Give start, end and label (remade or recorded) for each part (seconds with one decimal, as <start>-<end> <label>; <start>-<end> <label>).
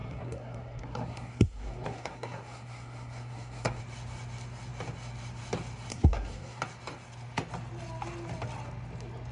0.0-3.8 remade; 3.8-5.9 recorded; 5.9-6.6 remade; 6.6-9.3 recorded